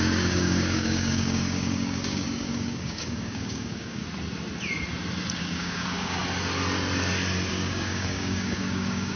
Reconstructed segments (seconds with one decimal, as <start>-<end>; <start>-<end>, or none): 0.0-4.0; 5.4-6.2; 7.5-9.2